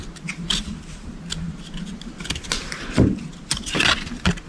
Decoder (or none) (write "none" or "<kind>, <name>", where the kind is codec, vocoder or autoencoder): none